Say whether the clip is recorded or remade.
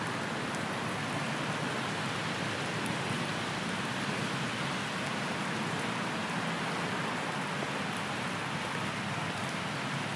recorded